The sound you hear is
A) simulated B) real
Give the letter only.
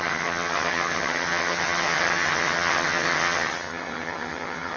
A